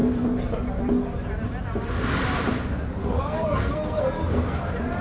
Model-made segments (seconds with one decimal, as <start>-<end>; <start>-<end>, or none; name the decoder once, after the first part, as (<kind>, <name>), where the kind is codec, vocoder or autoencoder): 3.0-4.6 (codec, SNAC)